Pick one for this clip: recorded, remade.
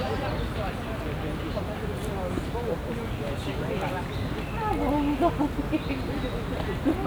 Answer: recorded